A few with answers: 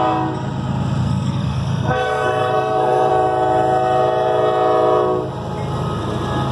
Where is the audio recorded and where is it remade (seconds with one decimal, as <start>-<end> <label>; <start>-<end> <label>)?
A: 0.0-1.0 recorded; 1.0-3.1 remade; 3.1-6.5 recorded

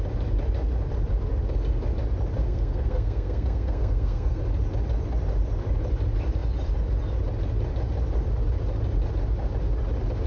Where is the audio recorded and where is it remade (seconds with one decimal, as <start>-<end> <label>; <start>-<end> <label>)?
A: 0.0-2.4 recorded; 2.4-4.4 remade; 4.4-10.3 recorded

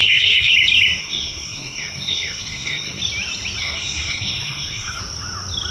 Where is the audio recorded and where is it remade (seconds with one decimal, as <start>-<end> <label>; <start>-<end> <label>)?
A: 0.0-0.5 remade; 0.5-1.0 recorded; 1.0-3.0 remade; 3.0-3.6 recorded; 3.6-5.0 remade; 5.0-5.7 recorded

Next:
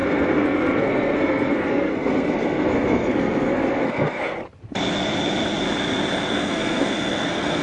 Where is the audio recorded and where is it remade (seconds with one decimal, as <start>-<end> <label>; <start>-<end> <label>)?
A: 0.0-4.4 remade; 4.4-6.3 recorded; 6.3-7.6 remade

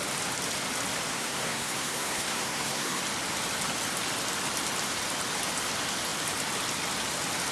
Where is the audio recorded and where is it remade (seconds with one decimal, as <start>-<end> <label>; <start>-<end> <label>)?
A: 0.0-1.1 recorded; 1.1-3.0 remade; 3.0-7.5 recorded

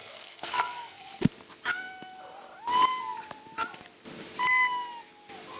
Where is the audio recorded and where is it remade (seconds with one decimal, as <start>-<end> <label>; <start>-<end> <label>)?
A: 0.0-1.2 remade; 1.2-5.6 recorded

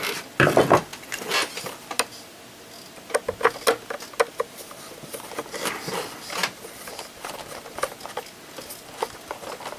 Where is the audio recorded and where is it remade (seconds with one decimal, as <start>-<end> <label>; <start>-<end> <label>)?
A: 0.0-9.8 recorded